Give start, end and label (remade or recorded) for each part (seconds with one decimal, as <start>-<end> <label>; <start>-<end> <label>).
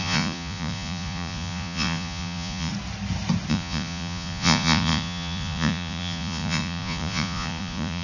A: 0.0-2.7 remade; 2.7-3.5 recorded; 3.5-8.0 remade